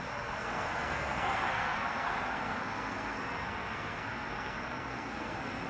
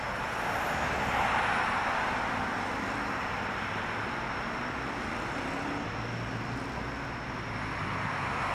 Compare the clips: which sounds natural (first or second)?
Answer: second